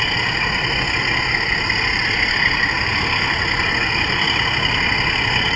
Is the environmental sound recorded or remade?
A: recorded